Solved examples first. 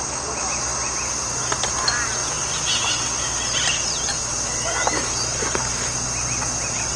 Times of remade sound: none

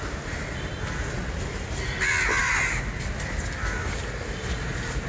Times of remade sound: none

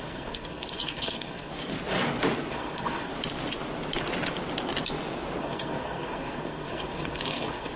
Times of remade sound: 0.0-1.5 (codec, SNAC); 2.5-3.1; 5.4-7.8

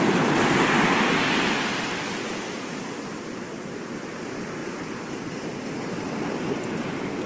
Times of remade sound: 4.6-5.2 (vocoder, BigVGAN v2)

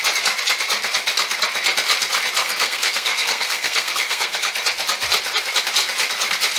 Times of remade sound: 2.4-4.5 (codec, SNAC)

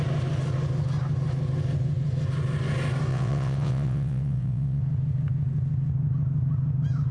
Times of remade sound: 3.1-4.8 (vocoder, WaveNeXt)

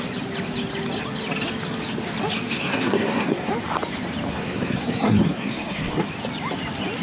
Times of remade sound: 2.5-3.5 (codec, SNAC); 4.3-6.0

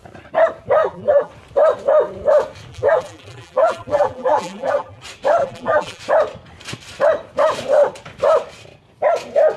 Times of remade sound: 0.8-1.3 (vocoder, BigVGAN v2); 2.7-5.0; 5.4-6.0